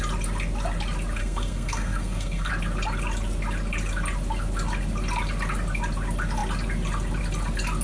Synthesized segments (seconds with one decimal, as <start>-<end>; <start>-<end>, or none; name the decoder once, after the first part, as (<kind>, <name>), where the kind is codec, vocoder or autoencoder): 1.2-2.5 (codec, SNAC)